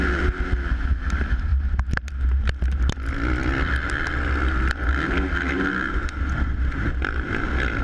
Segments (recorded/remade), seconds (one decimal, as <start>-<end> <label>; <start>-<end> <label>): 0.0-7.8 recorded